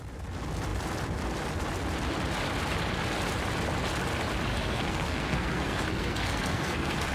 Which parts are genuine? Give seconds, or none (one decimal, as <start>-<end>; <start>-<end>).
0.0-4.5